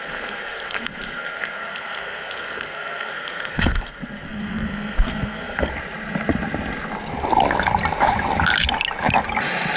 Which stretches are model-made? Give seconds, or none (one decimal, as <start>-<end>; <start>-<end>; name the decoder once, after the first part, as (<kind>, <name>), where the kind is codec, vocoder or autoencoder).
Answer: 0.0-5.7 (codec, SNAC)